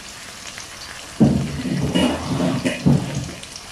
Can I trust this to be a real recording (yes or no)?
yes